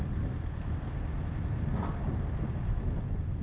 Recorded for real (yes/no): yes